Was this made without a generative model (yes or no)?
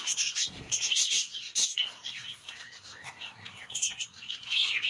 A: no